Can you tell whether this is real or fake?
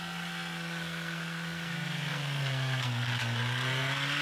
fake